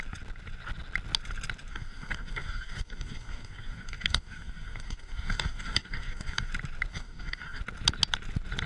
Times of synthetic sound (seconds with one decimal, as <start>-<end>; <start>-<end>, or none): 1.7-6.5; 6.9-7.6